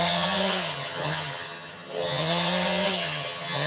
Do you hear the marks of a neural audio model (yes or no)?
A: yes